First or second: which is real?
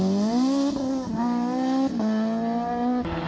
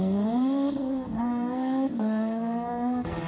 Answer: first